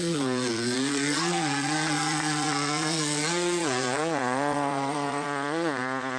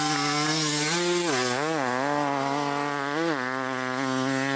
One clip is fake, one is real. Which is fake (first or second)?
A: first